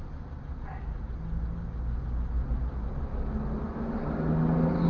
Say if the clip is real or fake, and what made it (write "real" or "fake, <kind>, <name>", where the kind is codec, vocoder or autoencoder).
real